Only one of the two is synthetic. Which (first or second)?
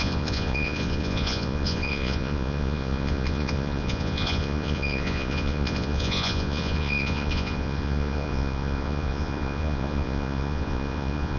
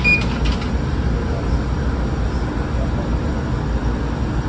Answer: first